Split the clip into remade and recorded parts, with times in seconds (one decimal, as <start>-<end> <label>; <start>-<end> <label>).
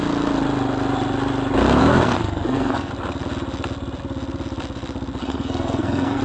0.0-1.8 recorded; 1.8-2.9 remade; 2.9-5.2 recorded; 5.2-6.2 remade